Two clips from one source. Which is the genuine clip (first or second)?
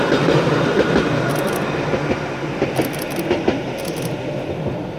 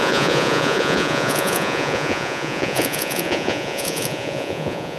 first